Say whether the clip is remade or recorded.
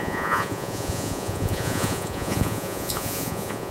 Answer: remade